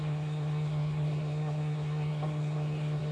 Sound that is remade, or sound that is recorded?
remade